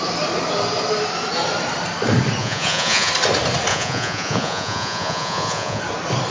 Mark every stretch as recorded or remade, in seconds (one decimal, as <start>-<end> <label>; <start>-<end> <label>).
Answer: 0.0-2.4 recorded; 2.4-3.1 remade; 3.1-3.7 recorded; 3.7-5.8 remade; 5.8-6.3 recorded